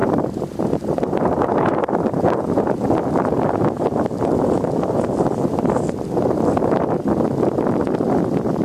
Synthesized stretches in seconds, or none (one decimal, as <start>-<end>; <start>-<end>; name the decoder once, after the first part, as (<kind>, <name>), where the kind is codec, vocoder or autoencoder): 0.0-2.6 (vocoder, BigVGAN v2)